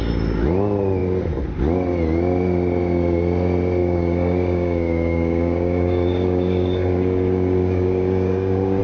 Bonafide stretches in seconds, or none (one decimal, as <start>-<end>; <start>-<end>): 0.0-3.8